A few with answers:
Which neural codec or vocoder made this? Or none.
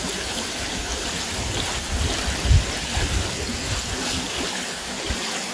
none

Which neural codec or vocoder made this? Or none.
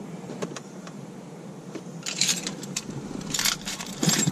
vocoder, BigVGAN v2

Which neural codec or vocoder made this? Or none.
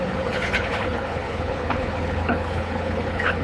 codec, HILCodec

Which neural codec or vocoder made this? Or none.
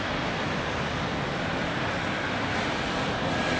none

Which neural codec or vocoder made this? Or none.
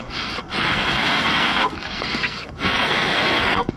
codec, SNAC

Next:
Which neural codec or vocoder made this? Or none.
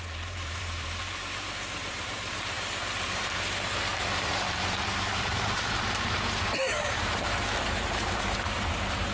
vocoder, BigVGAN v2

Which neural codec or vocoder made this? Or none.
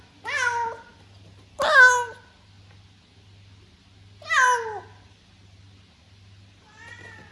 none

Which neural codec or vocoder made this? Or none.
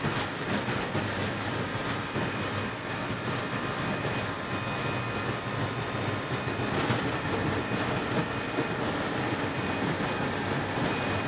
none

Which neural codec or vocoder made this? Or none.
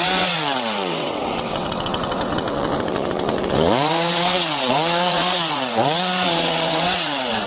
vocoder, WaveNeXt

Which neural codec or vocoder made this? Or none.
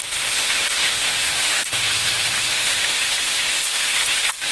autoencoder, DAC-VAE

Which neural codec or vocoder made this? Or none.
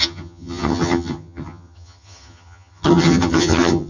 vocoder, HiFi-GAN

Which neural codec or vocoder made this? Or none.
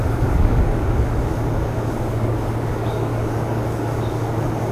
codec, DAC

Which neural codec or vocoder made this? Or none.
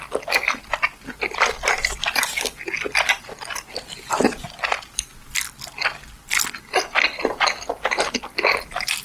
none